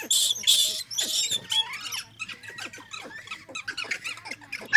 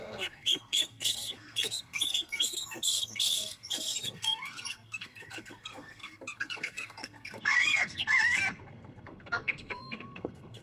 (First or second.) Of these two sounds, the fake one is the second